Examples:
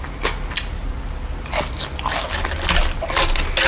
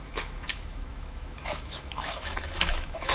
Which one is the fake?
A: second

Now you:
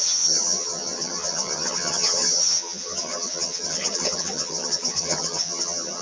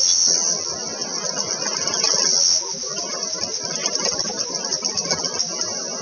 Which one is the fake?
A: first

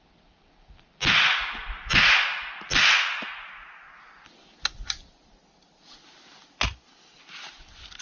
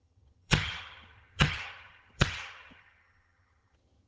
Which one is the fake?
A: second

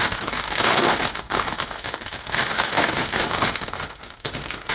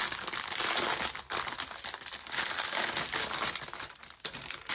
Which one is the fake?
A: first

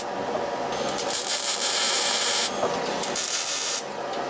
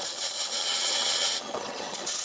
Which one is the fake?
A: second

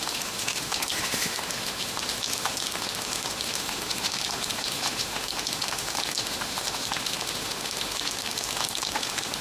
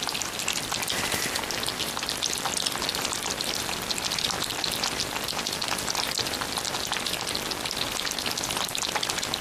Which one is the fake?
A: first